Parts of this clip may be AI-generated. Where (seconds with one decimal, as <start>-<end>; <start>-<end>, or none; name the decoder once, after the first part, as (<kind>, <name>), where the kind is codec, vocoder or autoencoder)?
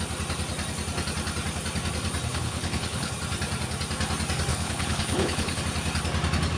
2.3-3.1 (codec, HILCodec); 4.5-5.6